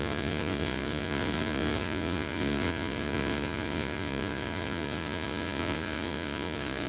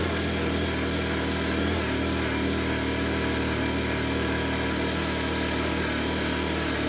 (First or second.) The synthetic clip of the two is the first